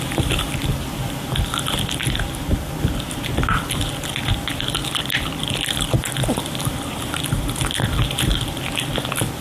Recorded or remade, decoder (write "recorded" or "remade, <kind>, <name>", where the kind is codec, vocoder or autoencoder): recorded